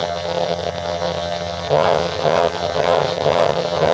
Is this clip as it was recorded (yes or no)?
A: no